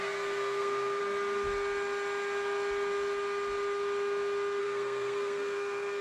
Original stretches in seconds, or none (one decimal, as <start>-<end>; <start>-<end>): 1.0-4.6